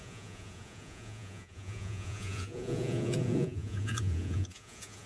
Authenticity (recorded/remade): remade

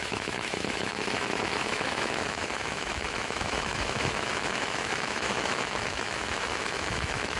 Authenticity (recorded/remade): remade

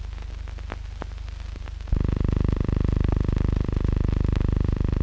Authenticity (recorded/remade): remade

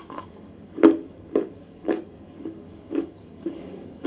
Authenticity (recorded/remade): remade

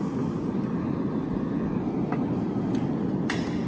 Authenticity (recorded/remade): recorded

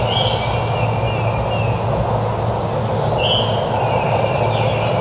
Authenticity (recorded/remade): recorded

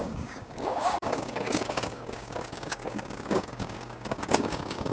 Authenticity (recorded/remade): remade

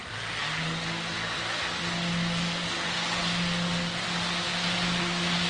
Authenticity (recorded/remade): recorded